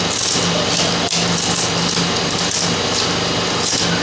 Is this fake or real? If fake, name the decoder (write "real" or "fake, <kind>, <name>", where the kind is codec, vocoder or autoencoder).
real